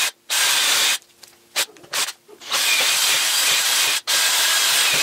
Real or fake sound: fake